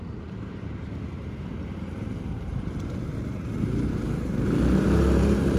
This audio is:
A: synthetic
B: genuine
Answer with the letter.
A